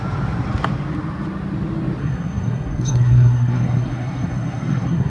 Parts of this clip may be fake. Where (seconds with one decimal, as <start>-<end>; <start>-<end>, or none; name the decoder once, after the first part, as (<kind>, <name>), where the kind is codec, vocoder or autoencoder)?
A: 2.0-5.1 (codec, SNAC)